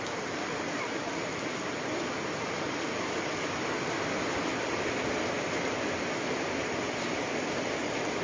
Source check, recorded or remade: recorded